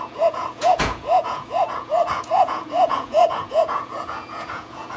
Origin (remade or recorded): remade